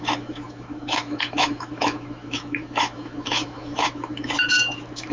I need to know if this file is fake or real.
fake